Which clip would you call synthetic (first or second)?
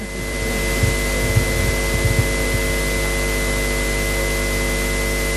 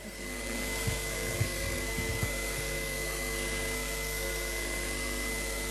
second